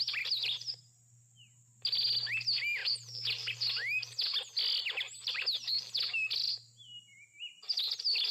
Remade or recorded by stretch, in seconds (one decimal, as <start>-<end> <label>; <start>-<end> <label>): 0.0-8.3 recorded